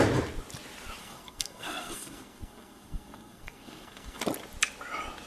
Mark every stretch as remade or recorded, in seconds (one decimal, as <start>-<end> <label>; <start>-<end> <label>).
0.0-1.0 recorded; 1.0-4.2 remade; 4.2-5.3 recorded